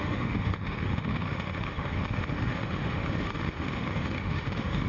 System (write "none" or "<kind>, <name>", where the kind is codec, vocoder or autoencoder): autoencoder, DAC-VAE